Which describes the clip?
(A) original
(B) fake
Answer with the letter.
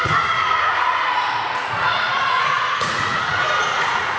B